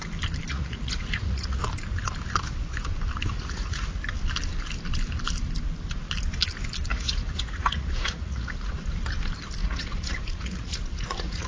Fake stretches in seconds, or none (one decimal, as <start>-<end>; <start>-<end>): 0.5-1.6; 3.3-4.0; 6.9-8.7; 9.6-11.5